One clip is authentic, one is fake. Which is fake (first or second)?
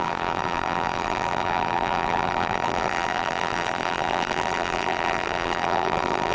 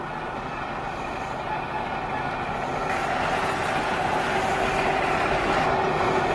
first